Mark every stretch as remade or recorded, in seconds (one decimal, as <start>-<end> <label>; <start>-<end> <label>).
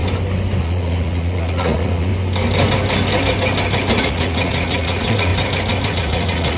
0.0-0.6 recorded; 0.6-2.1 remade; 2.1-4.0 recorded; 4.0-5.3 remade; 5.3-5.9 recorded; 5.9-6.6 remade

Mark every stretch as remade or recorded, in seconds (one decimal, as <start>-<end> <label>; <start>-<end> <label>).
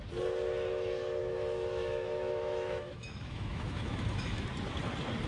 0.0-1.2 recorded; 1.2-4.4 remade; 4.4-5.3 recorded